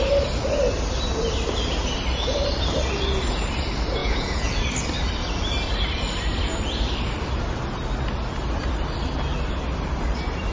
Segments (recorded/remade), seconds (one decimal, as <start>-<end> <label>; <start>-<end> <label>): 0.0-4.0 recorded; 4.0-4.6 remade; 4.6-10.5 recorded